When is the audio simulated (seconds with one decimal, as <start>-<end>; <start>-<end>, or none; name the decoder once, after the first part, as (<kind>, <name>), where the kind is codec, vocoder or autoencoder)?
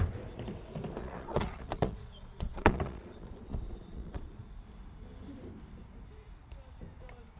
1.0-4.6 (vocoder, Vocos)